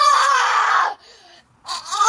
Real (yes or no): no